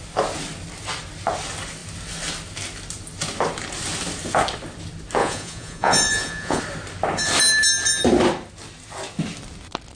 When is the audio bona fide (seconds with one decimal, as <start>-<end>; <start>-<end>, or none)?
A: 0.0-5.2; 6.6-10.0